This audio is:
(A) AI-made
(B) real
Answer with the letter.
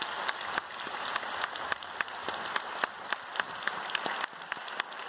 B